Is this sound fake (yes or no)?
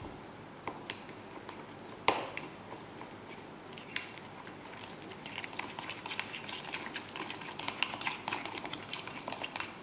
no